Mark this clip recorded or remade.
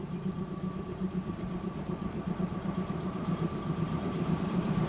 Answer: remade